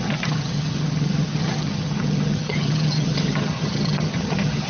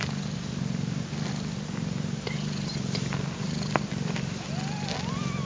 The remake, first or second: first